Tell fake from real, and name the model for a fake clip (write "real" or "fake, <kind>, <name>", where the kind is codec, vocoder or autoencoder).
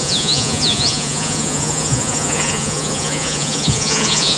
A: fake, vocoder, Vocos